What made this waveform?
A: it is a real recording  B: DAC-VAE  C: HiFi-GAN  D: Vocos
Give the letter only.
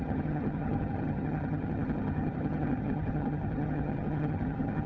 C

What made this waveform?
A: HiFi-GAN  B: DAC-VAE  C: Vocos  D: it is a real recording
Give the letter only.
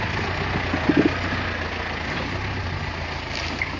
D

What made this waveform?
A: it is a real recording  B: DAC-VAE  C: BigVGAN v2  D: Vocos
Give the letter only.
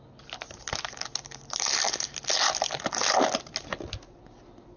A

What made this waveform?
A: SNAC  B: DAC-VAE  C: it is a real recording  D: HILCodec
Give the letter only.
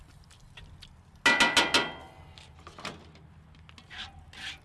C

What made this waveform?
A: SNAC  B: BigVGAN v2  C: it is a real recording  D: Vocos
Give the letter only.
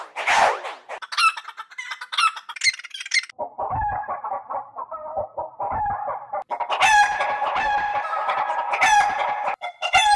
C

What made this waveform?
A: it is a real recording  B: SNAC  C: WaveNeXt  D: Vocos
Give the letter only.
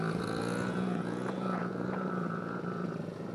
D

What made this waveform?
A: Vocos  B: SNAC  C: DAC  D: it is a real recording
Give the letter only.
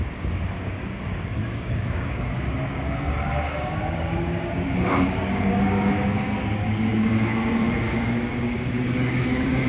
C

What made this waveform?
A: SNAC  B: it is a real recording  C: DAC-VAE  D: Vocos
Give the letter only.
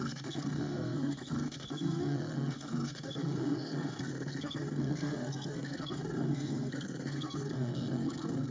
A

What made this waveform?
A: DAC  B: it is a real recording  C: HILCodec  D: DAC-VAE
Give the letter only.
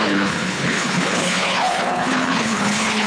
C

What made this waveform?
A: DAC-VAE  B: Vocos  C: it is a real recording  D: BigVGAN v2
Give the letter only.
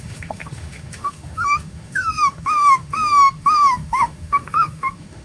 A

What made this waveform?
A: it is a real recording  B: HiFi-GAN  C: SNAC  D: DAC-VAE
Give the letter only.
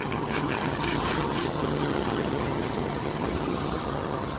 B